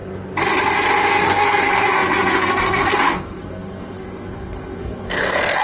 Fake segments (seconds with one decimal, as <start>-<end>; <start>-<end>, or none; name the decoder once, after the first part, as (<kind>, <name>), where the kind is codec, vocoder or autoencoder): 1.1-5.6 (codec, SNAC)